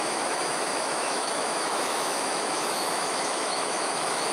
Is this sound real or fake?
fake